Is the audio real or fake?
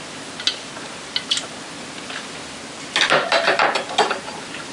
real